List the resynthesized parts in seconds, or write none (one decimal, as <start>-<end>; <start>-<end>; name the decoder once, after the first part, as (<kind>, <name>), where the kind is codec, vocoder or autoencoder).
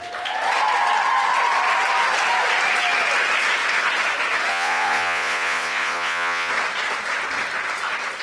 4.5-6.5 (vocoder, Vocos)